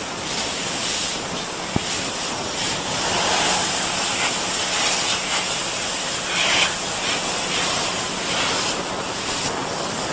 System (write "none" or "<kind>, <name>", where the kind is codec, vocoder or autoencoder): none